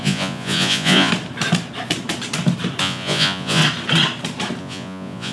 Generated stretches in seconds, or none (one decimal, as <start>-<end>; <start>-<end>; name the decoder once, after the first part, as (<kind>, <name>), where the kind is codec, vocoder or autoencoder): 0.0-1.1 (vocoder, Vocos); 2.8-3.6; 4.6-5.3